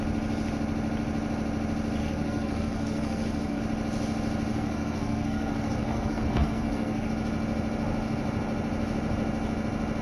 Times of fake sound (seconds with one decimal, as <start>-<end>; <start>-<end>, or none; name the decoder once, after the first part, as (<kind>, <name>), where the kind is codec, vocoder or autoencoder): 2.0-3.6 (codec, SNAC); 4.5-7.1